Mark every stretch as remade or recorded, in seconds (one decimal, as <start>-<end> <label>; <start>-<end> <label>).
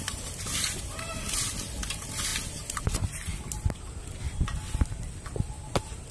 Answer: 0.0-6.1 recorded